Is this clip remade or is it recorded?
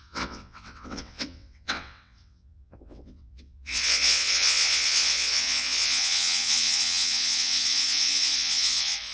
remade